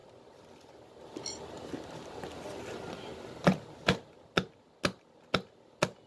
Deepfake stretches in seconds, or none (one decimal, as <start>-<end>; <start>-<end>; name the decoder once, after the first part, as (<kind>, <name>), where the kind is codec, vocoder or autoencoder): none

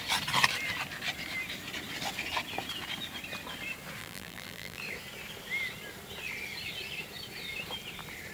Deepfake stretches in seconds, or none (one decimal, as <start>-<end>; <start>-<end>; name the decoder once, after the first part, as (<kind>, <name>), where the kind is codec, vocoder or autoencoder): 4.0-4.8 (vocoder, BigVGAN v2)

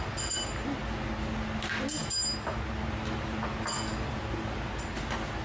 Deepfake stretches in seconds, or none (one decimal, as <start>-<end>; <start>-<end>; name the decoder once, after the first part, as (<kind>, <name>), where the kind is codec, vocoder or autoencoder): none

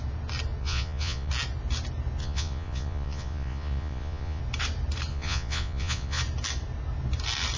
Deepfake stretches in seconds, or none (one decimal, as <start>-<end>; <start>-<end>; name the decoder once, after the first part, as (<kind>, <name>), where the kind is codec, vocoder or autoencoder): 0.6-1.3 (vocoder, Vocos); 2.2-4.4; 5.1-6.2

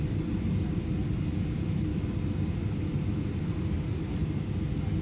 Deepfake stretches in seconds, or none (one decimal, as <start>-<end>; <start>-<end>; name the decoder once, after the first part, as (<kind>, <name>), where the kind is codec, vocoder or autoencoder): none

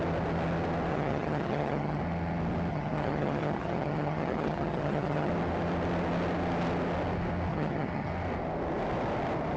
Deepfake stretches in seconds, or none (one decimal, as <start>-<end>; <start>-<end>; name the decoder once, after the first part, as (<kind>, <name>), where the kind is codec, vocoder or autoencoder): 0.9-2.0 (vocoder, HiFi-GAN); 2.7-5.3; 7.5-8.1

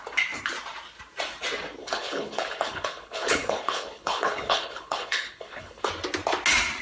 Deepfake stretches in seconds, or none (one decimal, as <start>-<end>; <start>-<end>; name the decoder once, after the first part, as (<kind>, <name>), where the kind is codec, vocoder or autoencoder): 1.8-5.9 (codec, HILCodec)